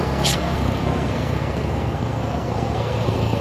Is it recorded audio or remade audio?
remade